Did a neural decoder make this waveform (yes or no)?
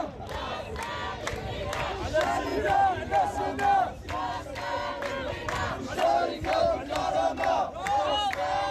no